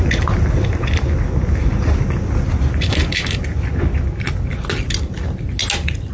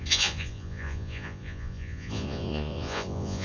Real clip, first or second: first